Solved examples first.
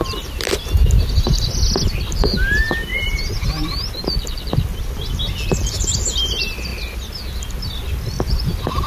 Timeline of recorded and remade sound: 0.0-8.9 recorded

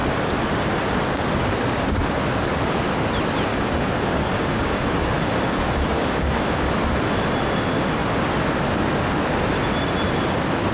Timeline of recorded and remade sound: 0.0-3.5 recorded; 3.5-6.7 remade; 6.7-10.7 recorded